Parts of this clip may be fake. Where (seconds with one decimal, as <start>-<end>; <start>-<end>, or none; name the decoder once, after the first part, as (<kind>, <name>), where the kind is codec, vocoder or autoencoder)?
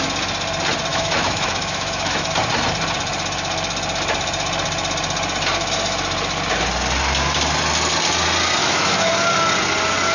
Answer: 0.9-2.3 (autoencoder, DAC-VAE); 8.6-9.1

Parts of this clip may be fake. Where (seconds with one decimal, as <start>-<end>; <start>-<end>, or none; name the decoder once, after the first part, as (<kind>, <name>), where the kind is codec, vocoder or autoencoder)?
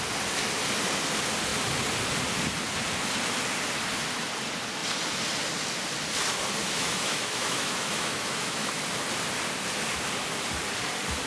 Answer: 6.6-8.8 (autoencoder, DAC-VAE)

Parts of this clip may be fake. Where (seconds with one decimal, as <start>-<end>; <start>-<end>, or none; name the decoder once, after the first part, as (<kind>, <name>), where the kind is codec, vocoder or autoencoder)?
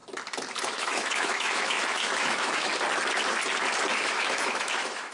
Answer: 0.6-2.7 (autoencoder, DAC-VAE); 3.9-5.1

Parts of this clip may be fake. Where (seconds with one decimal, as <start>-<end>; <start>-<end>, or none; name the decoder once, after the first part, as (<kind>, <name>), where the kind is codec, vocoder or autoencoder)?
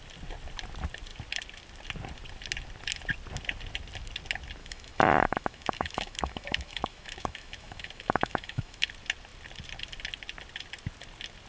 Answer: 4.6-8.9 (autoencoder, DAC-VAE)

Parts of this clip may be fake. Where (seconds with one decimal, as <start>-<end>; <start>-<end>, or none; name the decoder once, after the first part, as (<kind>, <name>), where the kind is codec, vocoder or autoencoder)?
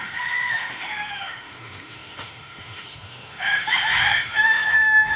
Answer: 0.0-5.2 (autoencoder, DAC-VAE)